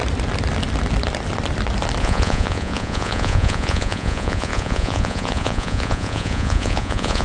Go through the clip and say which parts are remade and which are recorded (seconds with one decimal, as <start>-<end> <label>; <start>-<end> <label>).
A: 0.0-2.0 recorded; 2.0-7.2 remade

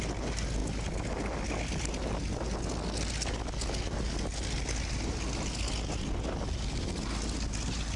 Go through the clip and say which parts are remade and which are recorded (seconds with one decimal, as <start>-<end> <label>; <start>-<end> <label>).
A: 0.0-8.0 recorded

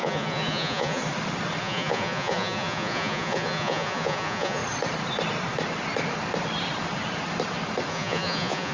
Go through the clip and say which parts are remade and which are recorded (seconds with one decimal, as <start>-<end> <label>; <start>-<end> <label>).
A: 0.0-1.0 remade; 1.0-1.6 recorded; 1.6-4.6 remade; 4.6-7.9 recorded; 7.9-8.7 remade